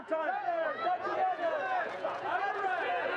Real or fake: fake